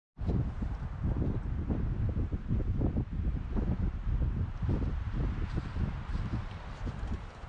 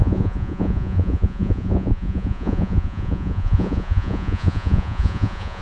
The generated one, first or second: second